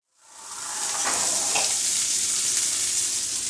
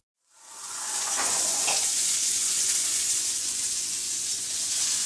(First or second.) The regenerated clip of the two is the second